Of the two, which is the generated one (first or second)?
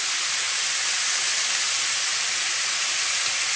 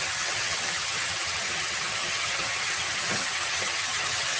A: second